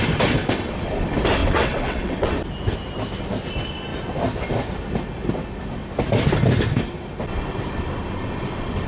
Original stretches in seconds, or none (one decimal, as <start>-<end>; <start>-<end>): 0.0-1.4; 2.3-8.9